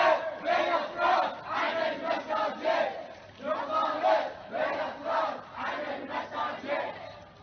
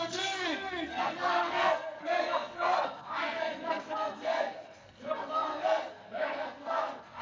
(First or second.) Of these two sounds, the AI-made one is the second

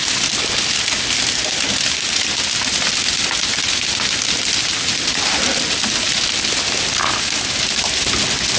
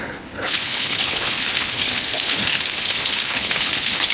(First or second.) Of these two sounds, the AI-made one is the second